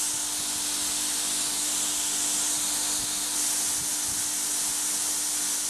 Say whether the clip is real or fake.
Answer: real